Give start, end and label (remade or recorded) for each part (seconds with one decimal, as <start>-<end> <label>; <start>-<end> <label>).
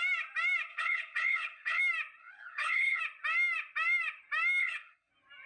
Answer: 0.0-0.7 recorded; 0.7-1.8 remade; 1.8-2.2 recorded; 2.2-3.0 remade; 3.0-4.6 recorded; 4.6-5.1 remade; 5.1-5.5 recorded